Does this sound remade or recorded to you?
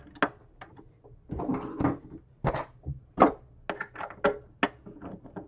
recorded